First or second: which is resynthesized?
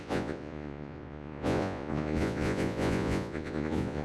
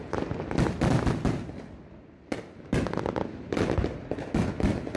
first